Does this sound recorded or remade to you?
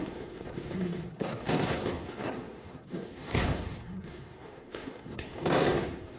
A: remade